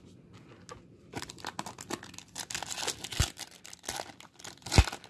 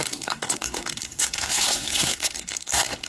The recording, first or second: first